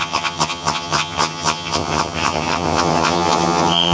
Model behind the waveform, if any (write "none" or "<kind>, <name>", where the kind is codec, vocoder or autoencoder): vocoder, HiFi-GAN